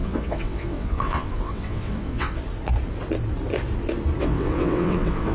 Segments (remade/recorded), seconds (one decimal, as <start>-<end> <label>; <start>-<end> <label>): 0.0-2.4 remade; 2.4-4.2 recorded; 4.2-5.3 remade